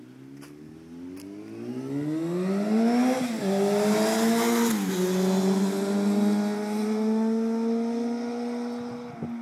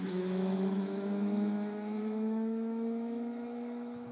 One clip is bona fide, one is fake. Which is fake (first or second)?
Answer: second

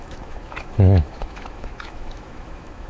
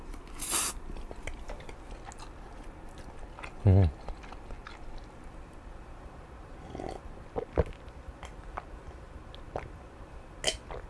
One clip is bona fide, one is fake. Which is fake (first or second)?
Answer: first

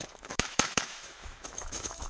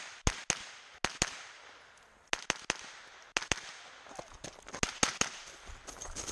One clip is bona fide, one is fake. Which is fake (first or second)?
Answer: first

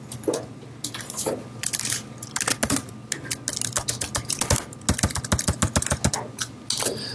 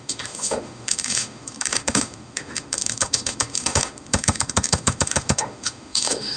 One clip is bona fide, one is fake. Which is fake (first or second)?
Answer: second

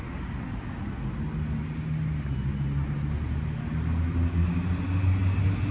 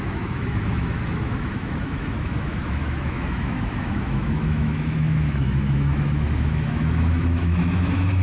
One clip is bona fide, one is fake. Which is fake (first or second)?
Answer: second